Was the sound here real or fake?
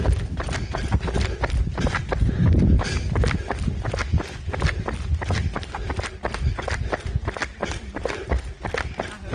real